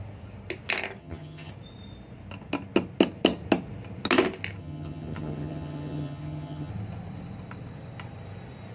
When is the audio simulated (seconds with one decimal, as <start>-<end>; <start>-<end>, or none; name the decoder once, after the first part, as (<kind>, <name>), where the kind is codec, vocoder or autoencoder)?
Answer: 1.0-1.5 (vocoder, HiFi-GAN); 4.6-6.7